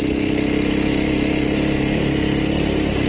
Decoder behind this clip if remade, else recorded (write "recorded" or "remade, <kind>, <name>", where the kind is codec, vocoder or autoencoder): recorded